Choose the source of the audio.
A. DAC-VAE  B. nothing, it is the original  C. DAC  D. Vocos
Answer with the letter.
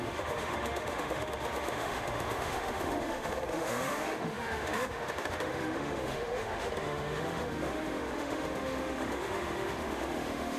A